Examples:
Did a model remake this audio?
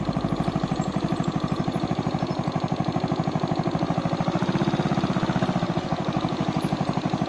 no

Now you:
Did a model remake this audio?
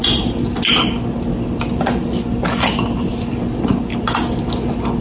no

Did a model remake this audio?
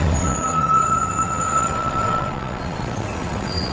yes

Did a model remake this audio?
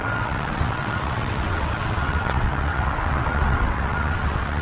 yes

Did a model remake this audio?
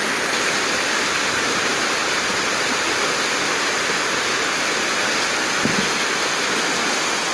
no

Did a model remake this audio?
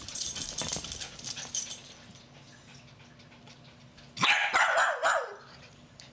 no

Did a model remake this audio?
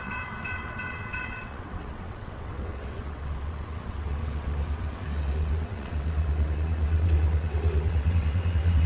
yes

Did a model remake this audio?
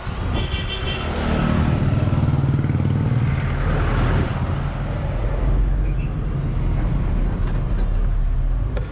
no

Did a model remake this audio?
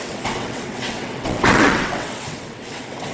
yes